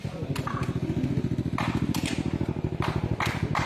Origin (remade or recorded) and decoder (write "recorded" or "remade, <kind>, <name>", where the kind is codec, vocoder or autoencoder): recorded